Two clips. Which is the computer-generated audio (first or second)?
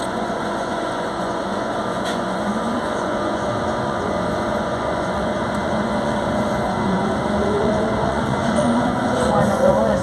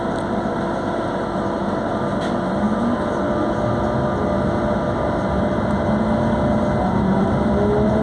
first